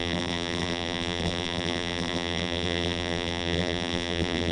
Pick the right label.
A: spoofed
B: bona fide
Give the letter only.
A